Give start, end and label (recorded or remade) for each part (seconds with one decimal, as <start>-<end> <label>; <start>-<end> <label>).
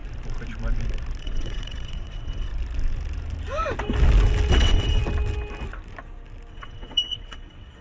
0.0-1.2 recorded; 1.2-2.5 remade; 2.5-4.5 recorded; 4.5-5.0 remade; 5.0-6.5 recorded; 6.5-7.8 remade